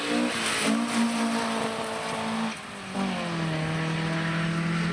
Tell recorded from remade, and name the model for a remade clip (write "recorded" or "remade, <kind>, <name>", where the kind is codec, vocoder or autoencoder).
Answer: recorded